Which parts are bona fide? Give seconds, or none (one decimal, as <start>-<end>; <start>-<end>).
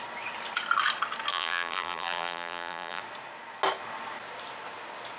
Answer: 0.0-1.3; 3.0-5.2